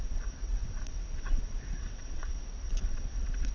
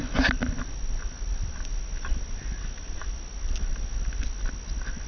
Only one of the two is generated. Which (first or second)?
first